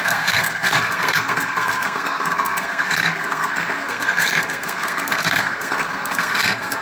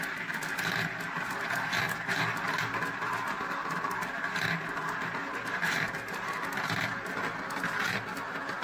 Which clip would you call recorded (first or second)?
second